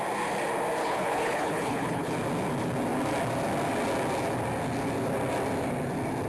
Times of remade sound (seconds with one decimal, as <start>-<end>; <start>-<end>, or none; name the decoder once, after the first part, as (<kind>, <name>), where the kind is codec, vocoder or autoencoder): 0.8-2.1 (codec, HILCodec)